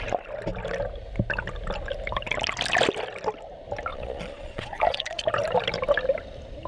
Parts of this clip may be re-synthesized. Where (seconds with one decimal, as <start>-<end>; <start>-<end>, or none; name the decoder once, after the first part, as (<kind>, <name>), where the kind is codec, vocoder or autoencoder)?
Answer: 3.9-5.2 (vocoder, Vocos)